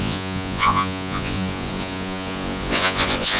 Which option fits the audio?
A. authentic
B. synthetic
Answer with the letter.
B